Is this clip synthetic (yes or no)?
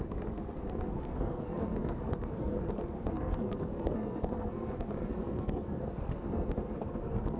yes